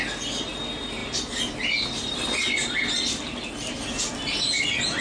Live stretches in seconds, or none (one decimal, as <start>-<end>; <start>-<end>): 0.0-5.0